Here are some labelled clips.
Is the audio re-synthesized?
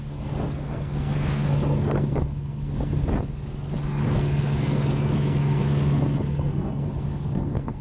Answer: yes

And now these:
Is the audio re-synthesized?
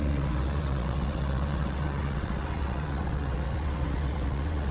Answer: yes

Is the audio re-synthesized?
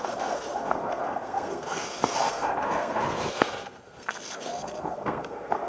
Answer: yes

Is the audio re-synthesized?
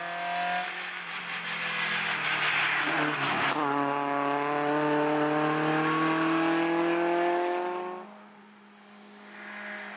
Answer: no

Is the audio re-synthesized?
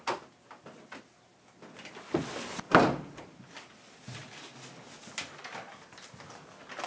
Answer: no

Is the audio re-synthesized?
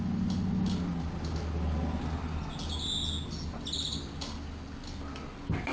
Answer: no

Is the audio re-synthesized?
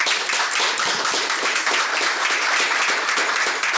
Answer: no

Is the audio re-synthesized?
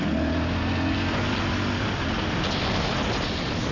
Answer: no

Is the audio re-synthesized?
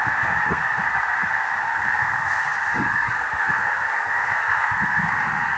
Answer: yes